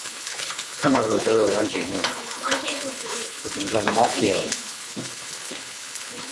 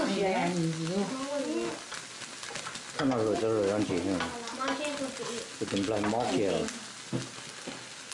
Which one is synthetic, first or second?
first